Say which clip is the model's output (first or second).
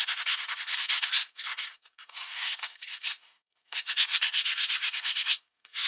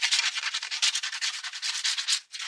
first